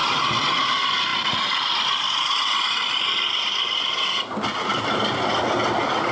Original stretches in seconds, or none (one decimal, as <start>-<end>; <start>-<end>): 0.0-6.1